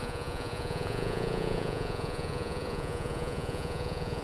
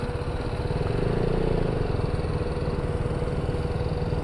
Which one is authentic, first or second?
second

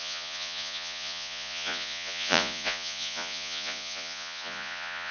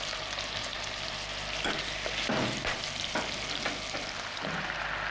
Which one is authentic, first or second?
second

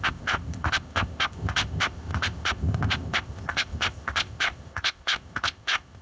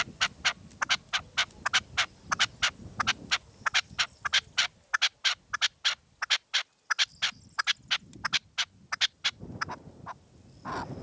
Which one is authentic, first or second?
second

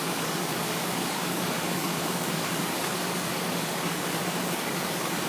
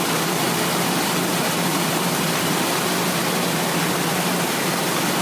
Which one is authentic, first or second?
second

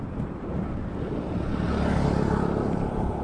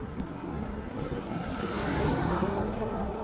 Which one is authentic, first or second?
first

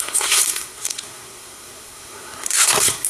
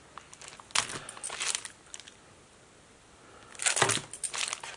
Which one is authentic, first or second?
second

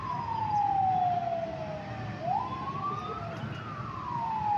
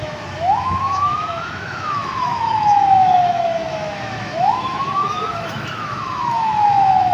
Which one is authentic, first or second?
first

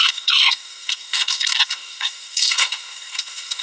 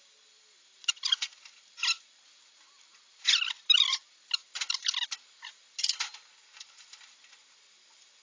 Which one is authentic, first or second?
second